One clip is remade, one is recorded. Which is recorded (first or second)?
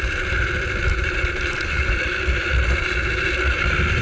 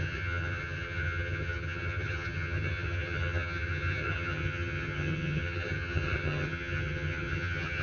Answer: first